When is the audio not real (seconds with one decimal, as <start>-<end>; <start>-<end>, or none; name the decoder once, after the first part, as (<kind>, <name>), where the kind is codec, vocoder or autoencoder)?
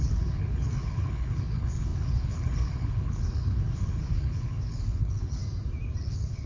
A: 0.0-5.4 (codec, HILCodec); 6.0-6.5